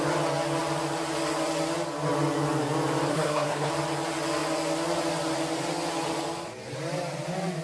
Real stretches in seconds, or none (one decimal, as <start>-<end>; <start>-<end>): 0.0-3.1; 3.7-7.6